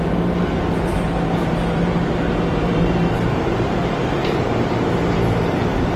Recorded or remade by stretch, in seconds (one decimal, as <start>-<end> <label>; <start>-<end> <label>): 0.0-6.0 remade